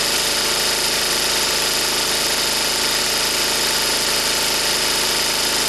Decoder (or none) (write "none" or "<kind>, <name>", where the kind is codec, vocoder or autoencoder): none